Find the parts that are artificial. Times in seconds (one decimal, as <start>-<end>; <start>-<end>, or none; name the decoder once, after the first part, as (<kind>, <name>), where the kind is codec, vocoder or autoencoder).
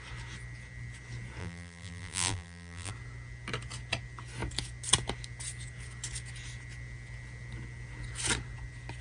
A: 1.4-2.9 (vocoder, BigVGAN v2)